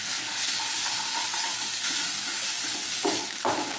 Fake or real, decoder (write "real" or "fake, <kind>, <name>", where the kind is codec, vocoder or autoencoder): fake, codec, DAC